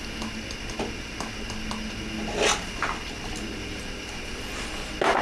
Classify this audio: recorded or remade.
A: recorded